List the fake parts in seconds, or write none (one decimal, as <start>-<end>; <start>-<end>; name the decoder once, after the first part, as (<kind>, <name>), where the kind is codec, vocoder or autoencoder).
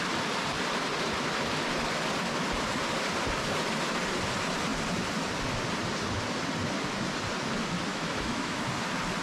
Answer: 7.9-8.6 (autoencoder, DAC-VAE)